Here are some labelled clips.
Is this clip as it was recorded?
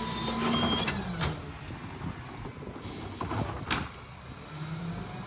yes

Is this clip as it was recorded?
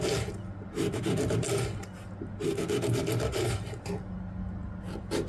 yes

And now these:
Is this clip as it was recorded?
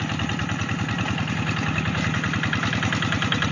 yes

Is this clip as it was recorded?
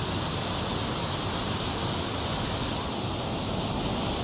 yes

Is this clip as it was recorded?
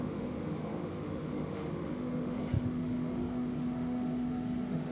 no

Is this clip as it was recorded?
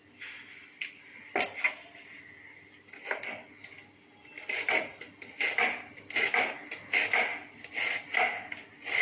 yes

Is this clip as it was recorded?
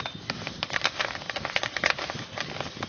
yes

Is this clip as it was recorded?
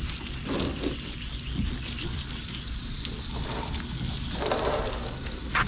yes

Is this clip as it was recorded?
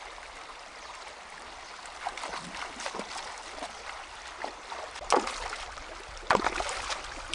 yes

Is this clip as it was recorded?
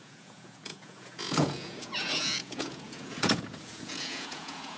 no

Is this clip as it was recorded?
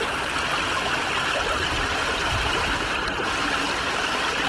yes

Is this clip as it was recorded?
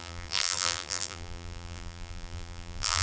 no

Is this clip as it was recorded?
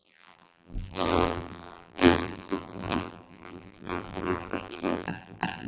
no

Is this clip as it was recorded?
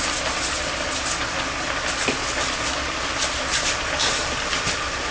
yes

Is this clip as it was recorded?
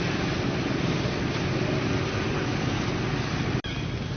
yes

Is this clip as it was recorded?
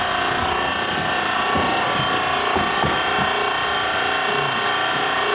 yes